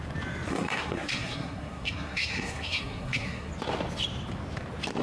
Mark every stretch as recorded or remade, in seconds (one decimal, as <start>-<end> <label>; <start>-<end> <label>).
0.0-0.5 recorded; 0.5-3.5 remade; 3.5-5.0 recorded